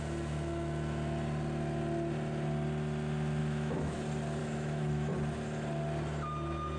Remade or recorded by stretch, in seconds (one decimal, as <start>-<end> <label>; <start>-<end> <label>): 0.0-3.4 recorded; 3.4-4.0 remade; 4.0-4.4 recorded; 4.4-5.1 remade; 5.1-6.8 recorded